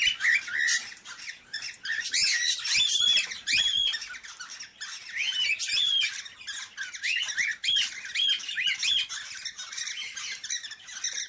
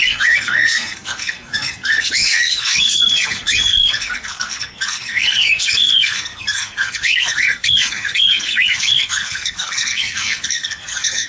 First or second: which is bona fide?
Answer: first